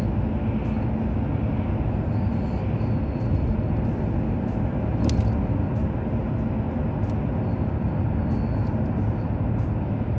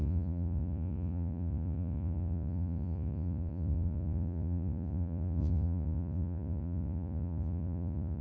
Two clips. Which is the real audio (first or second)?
first